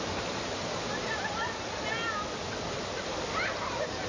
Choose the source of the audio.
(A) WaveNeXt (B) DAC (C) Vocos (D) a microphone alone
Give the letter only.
D